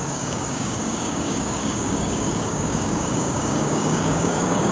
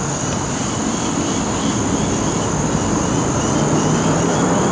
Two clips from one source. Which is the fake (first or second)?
first